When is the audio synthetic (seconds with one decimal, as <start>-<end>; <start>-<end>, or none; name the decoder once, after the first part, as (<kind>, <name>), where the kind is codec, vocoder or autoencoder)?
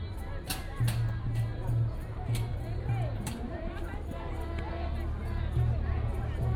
2.5-4.2 (vocoder, BigVGAN v2)